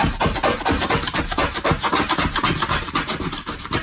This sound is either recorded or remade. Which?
remade